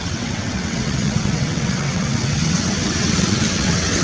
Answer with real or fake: fake